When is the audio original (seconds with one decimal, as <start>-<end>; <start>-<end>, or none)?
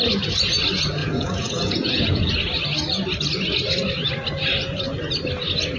0.0-1.0; 2.3-5.8